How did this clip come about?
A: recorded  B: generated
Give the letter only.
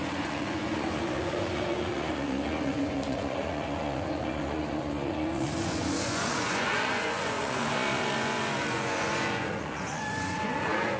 B